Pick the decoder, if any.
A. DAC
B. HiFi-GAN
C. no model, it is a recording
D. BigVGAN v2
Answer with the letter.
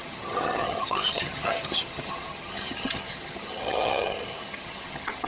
B